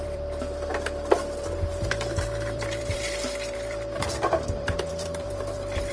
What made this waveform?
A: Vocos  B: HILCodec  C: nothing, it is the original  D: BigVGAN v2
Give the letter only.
D